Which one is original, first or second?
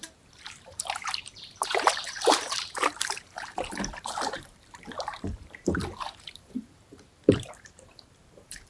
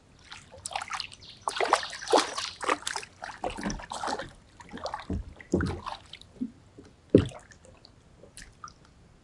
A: second